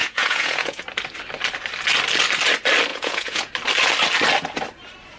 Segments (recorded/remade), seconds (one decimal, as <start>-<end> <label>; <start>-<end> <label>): 0.0-0.8 remade; 0.8-2.9 recorded; 2.9-3.5 remade; 3.5-5.2 recorded